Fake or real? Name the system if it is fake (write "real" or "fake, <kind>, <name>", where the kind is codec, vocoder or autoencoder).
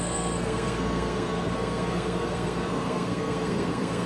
fake, codec, SNAC